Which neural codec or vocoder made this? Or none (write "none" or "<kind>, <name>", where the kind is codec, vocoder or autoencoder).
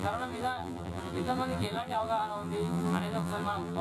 vocoder, BigVGAN v2